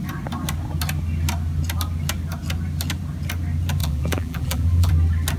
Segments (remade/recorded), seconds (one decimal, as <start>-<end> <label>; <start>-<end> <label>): 0.0-3.8 recorded; 3.8-4.9 remade; 4.9-5.4 recorded